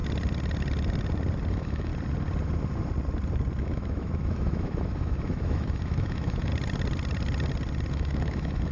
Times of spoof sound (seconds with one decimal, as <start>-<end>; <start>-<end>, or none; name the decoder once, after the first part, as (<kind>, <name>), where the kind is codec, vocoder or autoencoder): 1.5-1.9 (autoencoder, DAC-VAE); 3.6-6.5; 7.9-8.7